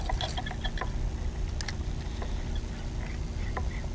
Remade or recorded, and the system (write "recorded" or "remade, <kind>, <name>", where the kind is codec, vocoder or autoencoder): recorded